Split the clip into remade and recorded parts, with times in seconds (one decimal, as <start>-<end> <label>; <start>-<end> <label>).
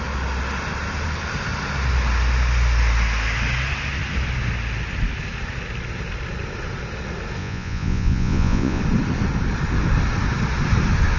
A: 0.0-7.4 recorded; 7.4-8.8 remade; 8.8-11.2 recorded